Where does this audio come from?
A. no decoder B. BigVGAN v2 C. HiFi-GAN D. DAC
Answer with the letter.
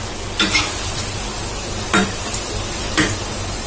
A